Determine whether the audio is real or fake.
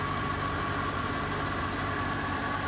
real